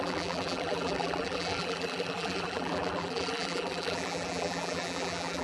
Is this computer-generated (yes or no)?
yes